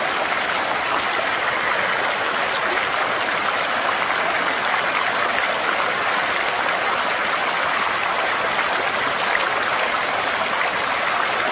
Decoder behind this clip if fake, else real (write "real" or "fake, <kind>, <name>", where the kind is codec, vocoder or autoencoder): real